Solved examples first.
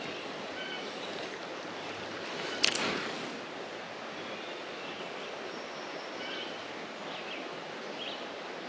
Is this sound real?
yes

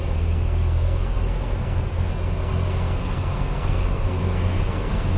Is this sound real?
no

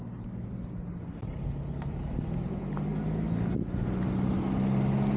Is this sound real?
yes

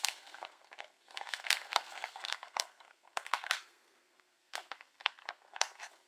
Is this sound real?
no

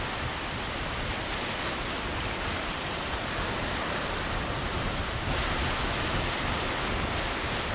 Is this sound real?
yes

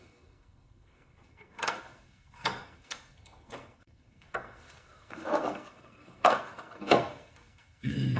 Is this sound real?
no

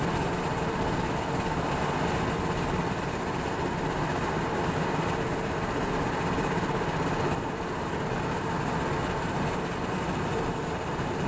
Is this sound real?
yes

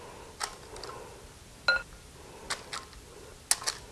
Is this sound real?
yes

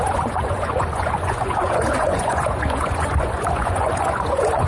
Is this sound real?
no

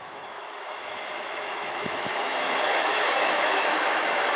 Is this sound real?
no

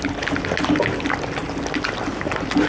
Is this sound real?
yes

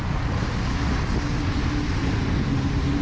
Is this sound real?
yes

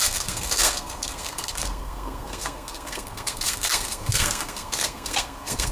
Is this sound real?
no